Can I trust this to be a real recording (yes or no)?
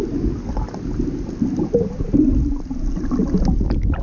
yes